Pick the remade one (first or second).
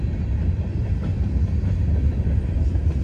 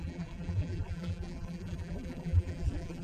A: second